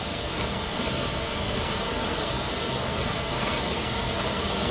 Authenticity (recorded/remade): remade